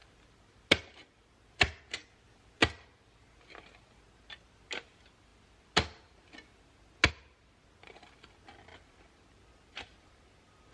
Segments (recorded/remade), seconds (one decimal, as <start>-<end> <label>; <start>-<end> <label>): 0.0-10.7 recorded